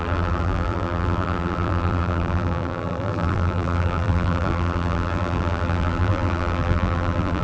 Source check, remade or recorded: remade